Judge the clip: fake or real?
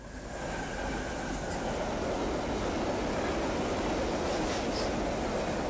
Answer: real